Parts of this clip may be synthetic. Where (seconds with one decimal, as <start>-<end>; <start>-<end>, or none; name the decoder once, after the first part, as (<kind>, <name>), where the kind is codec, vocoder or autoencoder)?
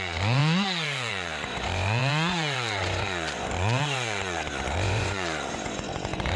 0.0-6.4 (vocoder, Vocos)